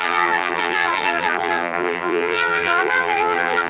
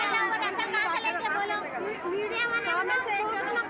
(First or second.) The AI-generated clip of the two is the first